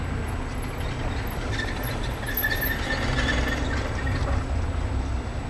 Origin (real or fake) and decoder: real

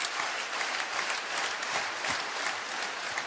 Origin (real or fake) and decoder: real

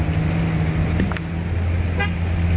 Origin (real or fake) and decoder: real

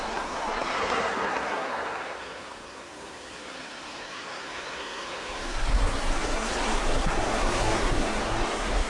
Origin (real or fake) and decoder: fake, codec, SNAC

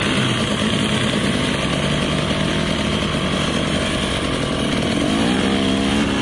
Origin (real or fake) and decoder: real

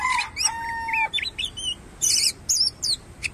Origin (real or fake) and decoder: real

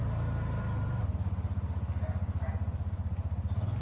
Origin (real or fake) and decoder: real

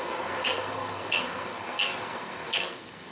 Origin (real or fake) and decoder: fake, codec, SNAC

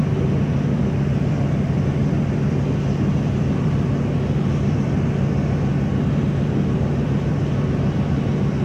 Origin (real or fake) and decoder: real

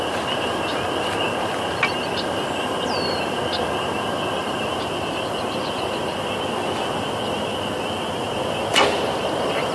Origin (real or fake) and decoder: real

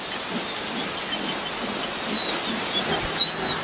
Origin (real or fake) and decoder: real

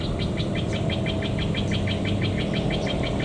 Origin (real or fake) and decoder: real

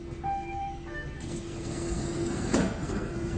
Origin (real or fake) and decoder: fake, codec, SNAC